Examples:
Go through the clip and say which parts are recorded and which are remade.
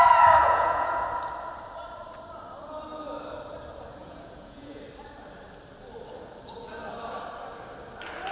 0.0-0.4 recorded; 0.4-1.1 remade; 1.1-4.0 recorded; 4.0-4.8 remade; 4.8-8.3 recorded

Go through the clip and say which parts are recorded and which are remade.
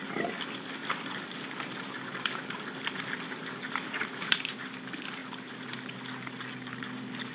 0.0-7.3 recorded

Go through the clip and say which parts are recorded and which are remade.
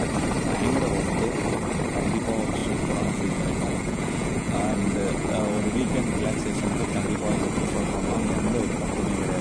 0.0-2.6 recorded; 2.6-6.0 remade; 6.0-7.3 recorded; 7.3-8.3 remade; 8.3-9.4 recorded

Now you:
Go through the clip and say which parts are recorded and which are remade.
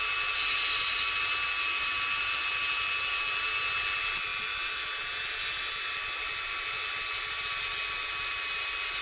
0.0-9.0 recorded